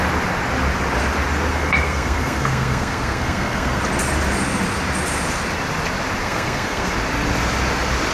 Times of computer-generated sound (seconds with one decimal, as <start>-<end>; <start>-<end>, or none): 1.5-3.8; 6.2-6.9